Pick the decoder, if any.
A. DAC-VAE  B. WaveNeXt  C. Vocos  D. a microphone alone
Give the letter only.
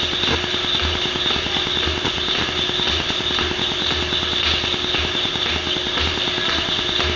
D